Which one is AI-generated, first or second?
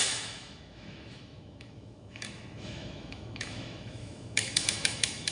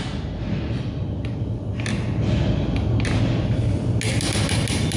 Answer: first